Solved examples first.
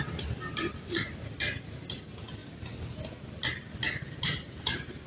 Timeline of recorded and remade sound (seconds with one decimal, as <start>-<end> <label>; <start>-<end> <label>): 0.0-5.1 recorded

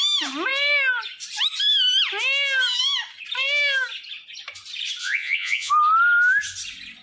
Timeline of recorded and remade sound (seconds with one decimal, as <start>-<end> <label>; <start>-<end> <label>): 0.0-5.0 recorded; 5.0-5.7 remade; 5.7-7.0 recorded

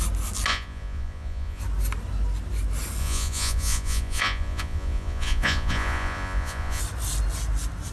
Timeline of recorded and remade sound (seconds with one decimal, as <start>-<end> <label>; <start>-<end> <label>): 0.0-0.5 recorded; 0.5-1.6 remade; 1.6-3.0 recorded; 3.0-6.8 remade; 6.8-7.9 recorded

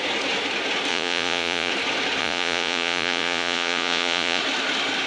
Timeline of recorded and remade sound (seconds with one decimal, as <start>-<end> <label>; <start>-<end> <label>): 0.0-0.9 recorded; 0.9-1.7 remade; 1.7-2.2 recorded; 2.2-4.4 remade; 4.4-5.1 recorded

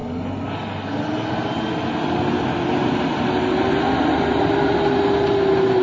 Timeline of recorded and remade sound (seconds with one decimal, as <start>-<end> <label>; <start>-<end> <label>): 0.0-5.8 recorded

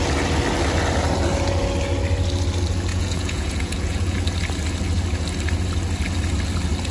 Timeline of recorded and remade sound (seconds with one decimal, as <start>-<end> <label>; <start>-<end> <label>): 0.0-2.9 recorded; 2.9-4.2 remade; 4.2-6.9 recorded